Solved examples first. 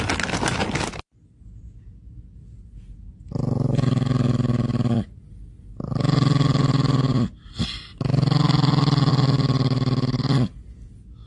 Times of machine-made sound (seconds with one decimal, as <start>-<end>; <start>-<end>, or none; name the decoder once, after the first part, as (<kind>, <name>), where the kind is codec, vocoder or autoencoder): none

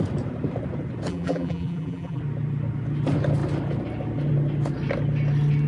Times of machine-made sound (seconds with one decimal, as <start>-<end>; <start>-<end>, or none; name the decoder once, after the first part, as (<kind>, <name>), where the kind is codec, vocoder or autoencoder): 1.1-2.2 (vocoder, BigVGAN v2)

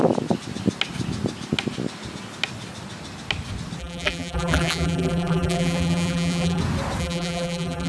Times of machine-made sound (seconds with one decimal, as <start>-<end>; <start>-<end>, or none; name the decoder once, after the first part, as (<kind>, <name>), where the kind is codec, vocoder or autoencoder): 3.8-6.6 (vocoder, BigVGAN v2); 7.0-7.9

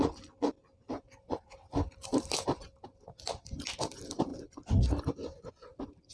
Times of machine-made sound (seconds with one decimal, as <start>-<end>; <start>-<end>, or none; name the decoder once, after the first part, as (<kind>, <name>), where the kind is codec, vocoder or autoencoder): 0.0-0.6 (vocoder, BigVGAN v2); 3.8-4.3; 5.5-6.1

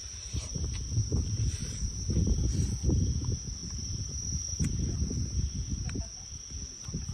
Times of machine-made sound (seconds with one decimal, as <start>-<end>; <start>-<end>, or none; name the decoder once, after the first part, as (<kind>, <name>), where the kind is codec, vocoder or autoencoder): 0.0-0.9 (vocoder, BigVGAN v2); 1.6-2.7; 3.6-5.5

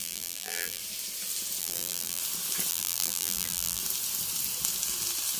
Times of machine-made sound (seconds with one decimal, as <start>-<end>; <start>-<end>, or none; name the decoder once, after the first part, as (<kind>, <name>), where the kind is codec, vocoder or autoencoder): 0.0-0.8 (vocoder, BigVGAN v2); 1.6-2.2; 2.7-3.8